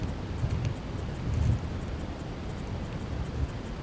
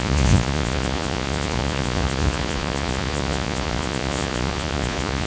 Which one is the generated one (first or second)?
second